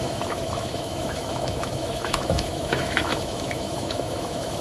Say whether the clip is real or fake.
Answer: fake